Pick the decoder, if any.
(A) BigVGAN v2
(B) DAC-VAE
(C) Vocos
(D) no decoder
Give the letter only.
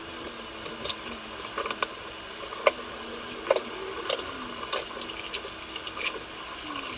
D